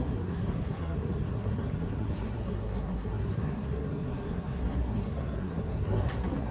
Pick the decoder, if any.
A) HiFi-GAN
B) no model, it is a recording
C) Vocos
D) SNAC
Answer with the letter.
D